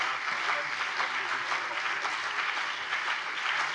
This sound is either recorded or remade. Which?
recorded